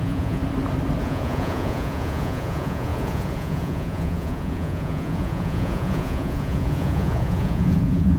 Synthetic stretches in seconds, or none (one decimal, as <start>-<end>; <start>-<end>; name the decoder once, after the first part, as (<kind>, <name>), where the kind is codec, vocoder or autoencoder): 0.0-0.4 (vocoder, Vocos); 1.0-8.2